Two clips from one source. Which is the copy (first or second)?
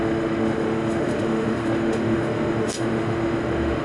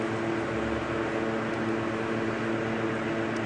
first